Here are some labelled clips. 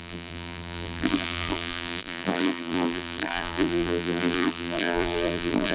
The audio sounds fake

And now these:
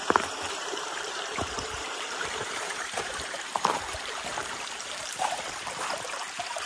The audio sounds fake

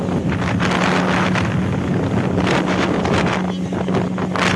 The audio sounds real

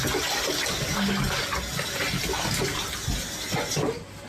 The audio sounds real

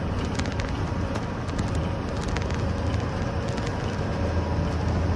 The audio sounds real